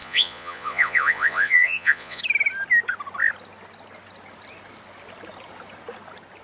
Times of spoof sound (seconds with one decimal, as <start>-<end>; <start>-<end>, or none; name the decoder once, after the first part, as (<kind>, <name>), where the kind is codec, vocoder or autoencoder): 0.0-2.2 (vocoder, Vocos)